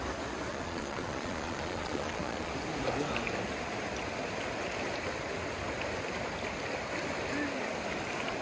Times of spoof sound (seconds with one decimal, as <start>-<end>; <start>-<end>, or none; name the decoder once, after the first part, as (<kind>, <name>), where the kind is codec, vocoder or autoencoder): 0.5-2.5 (vocoder, Vocos)